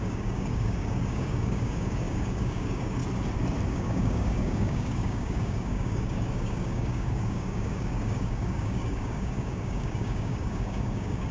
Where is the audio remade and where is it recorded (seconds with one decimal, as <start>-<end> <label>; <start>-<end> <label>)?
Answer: 0.0-3.0 remade; 3.0-3.7 recorded; 3.7-11.3 remade